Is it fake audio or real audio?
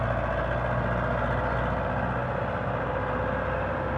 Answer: real